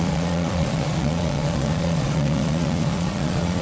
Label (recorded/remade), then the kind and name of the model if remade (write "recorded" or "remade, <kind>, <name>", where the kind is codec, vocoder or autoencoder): remade, vocoder, Vocos